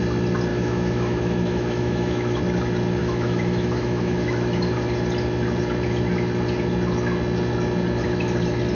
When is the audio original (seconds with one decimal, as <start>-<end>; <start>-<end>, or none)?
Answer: 0.0-0.5; 2.4-3.0; 4.7-8.7